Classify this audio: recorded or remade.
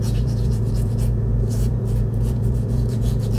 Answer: remade